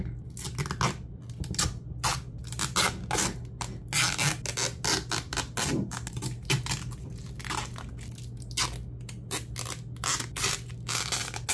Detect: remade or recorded recorded